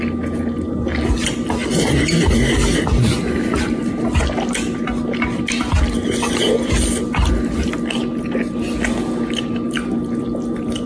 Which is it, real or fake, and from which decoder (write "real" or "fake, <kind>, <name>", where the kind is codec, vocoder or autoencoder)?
real